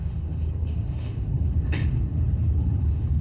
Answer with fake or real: fake